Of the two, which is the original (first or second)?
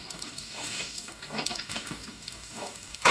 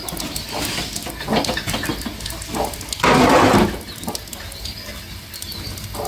second